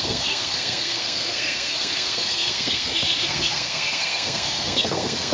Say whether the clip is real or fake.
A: fake